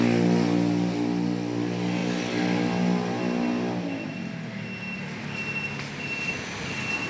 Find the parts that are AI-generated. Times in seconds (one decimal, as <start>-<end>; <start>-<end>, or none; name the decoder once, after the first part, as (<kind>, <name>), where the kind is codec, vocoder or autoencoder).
none